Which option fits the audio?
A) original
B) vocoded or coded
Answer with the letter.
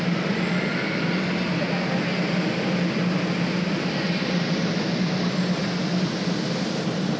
A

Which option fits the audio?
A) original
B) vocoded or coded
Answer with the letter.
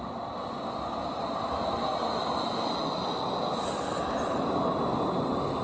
A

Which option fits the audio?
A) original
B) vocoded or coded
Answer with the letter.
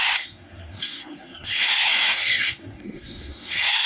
B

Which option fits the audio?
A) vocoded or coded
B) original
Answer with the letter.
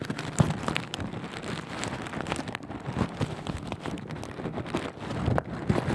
B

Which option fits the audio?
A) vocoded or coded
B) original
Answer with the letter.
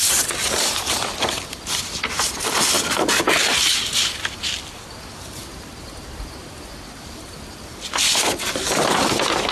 B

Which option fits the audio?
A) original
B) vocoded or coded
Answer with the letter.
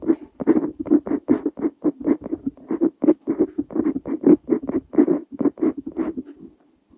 A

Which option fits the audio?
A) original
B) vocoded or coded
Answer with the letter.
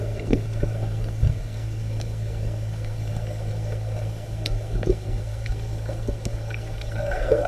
B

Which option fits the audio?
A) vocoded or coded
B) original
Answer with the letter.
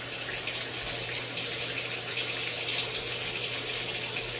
B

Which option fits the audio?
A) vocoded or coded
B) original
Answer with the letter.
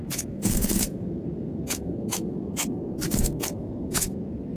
A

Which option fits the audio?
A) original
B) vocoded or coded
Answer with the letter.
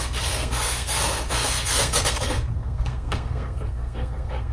B